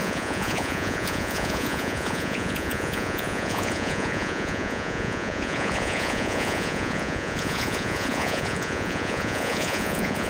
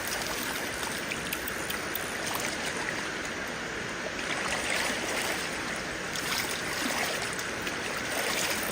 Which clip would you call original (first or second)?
second